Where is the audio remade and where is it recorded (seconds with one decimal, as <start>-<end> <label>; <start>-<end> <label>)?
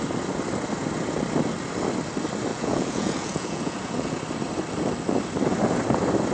0.0-2.5 recorded; 2.5-4.2 remade; 4.2-6.3 recorded